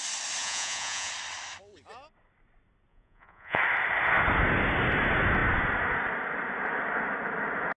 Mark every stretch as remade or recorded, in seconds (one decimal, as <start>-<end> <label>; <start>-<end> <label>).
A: 0.0-0.4 recorded; 0.4-1.1 remade; 1.1-2.9 recorded; 2.9-3.6 remade; 3.6-7.8 recorded